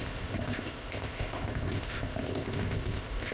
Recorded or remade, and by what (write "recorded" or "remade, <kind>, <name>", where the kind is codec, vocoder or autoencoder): remade, codec, ZipCodec